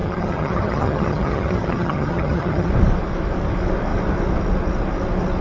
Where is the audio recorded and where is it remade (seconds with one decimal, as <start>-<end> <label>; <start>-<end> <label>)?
0.0-2.7 remade; 2.7-5.4 recorded